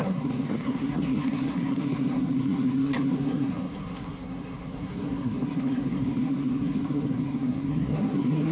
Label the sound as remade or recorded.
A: remade